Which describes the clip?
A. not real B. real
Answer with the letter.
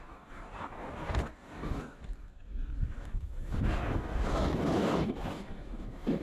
A